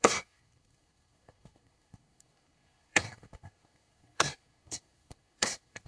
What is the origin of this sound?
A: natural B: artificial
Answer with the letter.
B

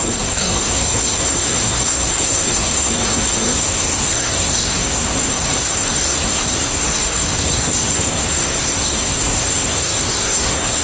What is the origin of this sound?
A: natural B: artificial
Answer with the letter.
B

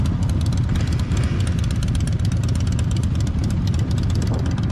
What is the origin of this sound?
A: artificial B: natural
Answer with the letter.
B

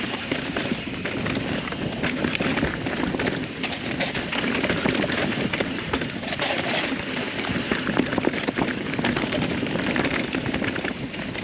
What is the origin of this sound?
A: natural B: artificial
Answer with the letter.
B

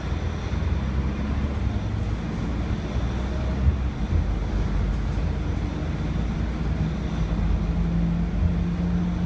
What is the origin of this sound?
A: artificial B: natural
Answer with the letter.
B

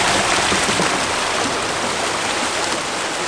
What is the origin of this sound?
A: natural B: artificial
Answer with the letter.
A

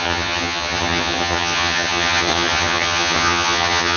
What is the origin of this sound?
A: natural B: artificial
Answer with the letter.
B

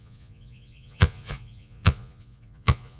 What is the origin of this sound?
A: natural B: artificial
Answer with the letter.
B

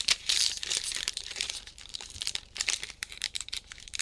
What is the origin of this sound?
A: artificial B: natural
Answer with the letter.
A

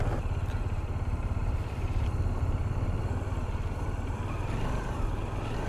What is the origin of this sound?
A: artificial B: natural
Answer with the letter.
B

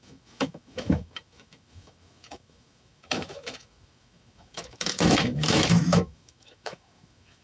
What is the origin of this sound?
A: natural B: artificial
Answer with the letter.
B